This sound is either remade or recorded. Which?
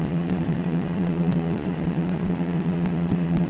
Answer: remade